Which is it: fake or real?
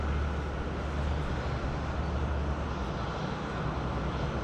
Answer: real